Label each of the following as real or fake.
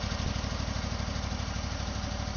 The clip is real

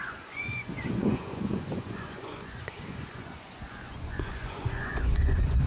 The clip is fake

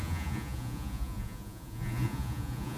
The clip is fake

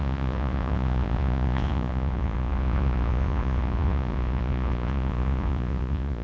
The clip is fake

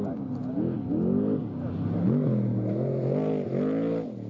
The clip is real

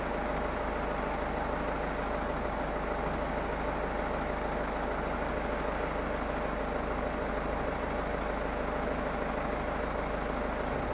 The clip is real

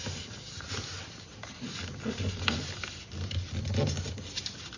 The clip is real